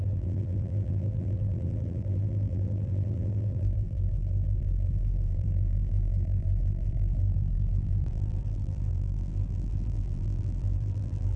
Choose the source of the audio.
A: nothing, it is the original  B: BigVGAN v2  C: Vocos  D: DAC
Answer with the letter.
B